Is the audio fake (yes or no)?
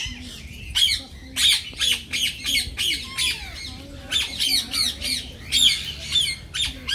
no